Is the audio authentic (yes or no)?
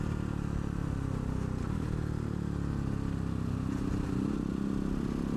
yes